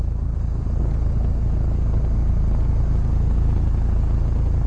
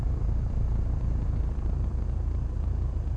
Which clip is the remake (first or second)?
second